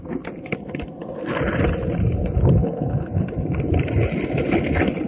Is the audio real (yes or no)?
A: yes